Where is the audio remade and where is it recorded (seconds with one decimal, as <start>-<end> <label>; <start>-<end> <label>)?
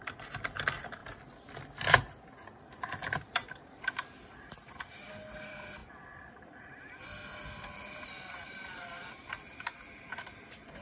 0.0-1.0 remade; 1.0-2.6 recorded; 2.6-5.8 remade; 5.8-6.3 recorded; 6.3-10.8 remade